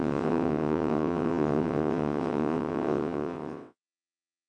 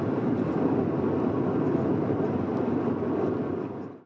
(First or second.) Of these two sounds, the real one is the second